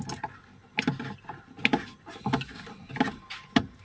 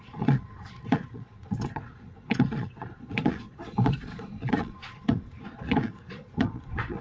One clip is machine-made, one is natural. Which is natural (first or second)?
first